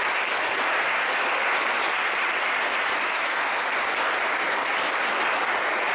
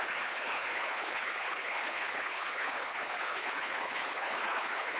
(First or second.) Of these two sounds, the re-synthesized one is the second